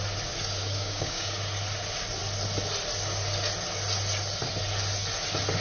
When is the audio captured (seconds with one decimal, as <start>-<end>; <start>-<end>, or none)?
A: 0.0-0.6; 1.4-5.6